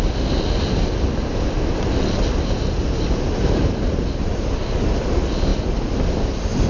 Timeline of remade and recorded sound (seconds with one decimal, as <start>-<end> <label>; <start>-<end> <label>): 0.0-6.7 recorded